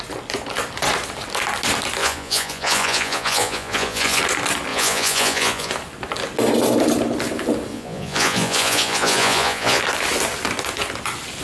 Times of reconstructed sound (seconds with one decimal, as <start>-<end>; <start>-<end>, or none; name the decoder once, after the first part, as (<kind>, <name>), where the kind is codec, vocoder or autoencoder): 2.0-4.2 (vocoder, Vocos); 4.7-5.7; 7.7-9.8